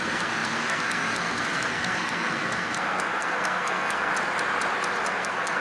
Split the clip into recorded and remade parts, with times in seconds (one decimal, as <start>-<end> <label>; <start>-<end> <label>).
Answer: 0.0-4.1 remade; 4.1-5.1 recorded; 5.1-5.6 remade